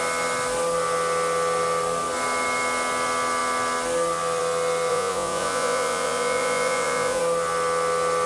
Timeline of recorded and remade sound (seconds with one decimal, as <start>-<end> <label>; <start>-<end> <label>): 0.0-4.9 recorded; 4.9-7.2 remade; 7.2-8.3 recorded